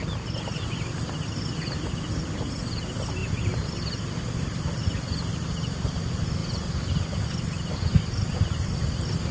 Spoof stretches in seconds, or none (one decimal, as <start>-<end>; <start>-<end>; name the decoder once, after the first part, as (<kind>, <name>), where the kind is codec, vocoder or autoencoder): none